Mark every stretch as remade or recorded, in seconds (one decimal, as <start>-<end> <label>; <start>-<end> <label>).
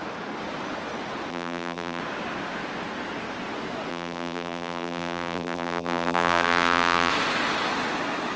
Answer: 0.0-1.3 recorded; 1.3-2.0 remade; 2.0-3.9 recorded; 3.9-7.1 remade; 7.1-8.4 recorded